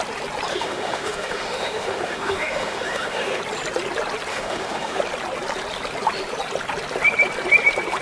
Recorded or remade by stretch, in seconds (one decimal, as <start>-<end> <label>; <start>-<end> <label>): 0.0-0.5 recorded; 0.5-3.4 remade; 3.4-4.3 recorded; 4.3-5.0 remade; 5.0-8.0 recorded